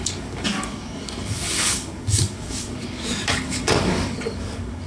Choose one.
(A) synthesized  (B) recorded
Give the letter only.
A